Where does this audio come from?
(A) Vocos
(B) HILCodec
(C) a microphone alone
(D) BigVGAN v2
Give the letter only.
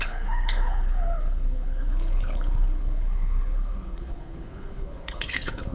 B